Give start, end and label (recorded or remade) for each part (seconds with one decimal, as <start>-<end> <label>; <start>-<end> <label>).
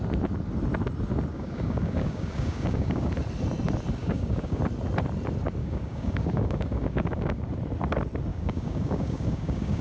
0.0-1.3 recorded; 1.3-3.1 remade; 3.1-4.0 recorded; 4.0-4.6 remade; 4.6-5.6 recorded; 5.6-7.4 remade; 7.4-8.3 recorded; 8.3-9.8 remade